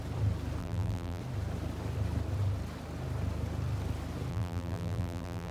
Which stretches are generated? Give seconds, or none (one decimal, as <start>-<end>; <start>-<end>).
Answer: 0.6-1.2; 4.3-5.5